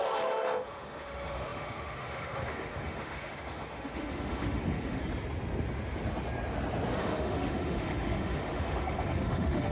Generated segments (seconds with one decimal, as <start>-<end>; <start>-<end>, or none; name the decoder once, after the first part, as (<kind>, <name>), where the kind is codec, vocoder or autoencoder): 0.0-5.0 (autoencoder, DAC-VAE); 7.0-9.7